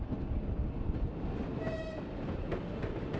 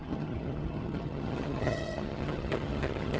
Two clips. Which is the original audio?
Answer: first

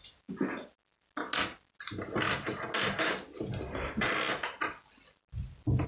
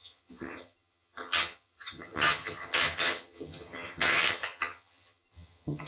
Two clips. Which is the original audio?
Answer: first